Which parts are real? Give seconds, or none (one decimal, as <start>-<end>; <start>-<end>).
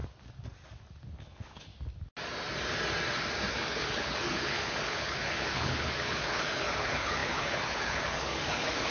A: 0.0-1.2; 1.7-3.5